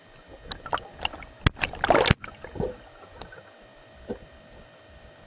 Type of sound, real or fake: real